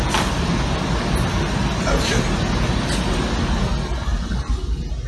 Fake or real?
real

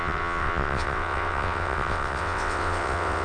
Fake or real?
fake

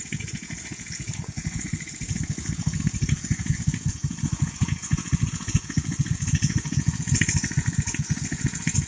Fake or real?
fake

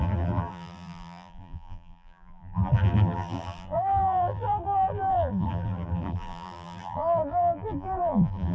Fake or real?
fake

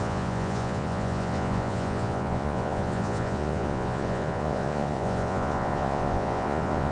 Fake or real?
fake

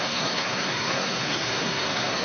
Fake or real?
fake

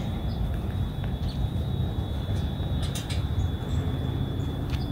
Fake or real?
fake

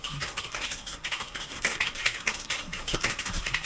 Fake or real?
fake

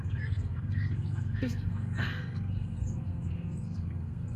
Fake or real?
fake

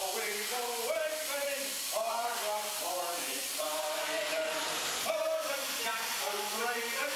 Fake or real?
fake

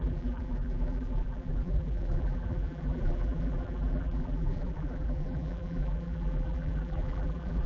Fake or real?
fake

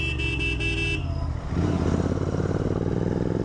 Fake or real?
real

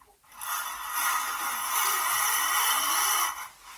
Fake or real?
real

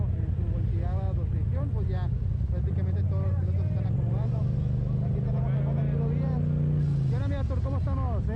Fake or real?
real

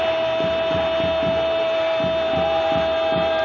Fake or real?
real